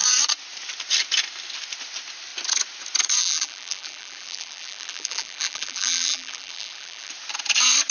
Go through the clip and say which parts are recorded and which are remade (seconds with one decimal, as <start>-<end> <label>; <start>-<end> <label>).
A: 0.0-3.2 recorded; 3.2-7.1 remade; 7.1-7.9 recorded